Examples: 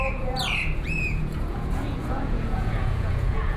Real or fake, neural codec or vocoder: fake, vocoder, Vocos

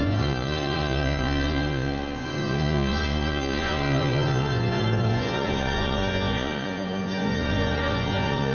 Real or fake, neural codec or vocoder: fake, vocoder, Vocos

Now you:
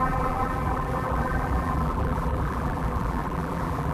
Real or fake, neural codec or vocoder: fake, vocoder, BigVGAN v2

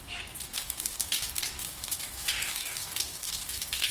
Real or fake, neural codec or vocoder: fake, codec, DAC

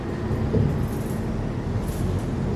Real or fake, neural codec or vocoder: real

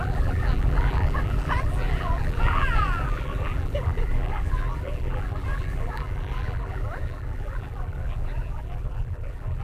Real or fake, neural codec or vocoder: fake, vocoder, BigVGAN v2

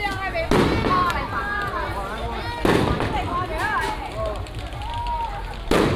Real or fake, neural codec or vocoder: real